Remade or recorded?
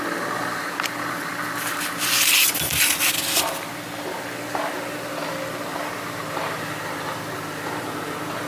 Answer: recorded